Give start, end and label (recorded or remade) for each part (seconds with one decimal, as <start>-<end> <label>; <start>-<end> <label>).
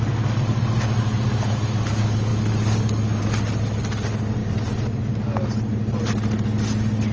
0.0-7.1 recorded